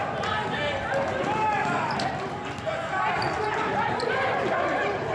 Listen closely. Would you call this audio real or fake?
real